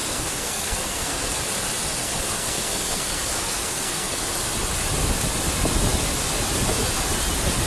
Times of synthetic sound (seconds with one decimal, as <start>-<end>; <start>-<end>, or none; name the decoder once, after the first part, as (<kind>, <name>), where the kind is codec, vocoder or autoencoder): 0.0-1.4 (codec, SNAC); 2.0-4.2